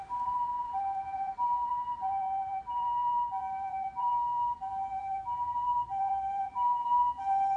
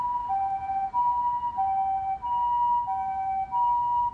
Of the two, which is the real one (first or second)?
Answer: second